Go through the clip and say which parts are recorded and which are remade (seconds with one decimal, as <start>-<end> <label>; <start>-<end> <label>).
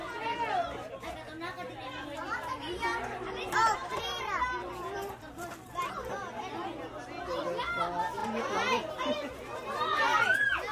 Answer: 0.0-2.9 recorded; 2.9-5.9 remade; 5.9-10.7 recorded